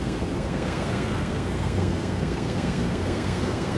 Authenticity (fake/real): fake